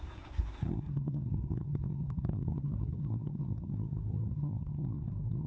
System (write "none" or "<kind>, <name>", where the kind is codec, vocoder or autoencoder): codec, SNAC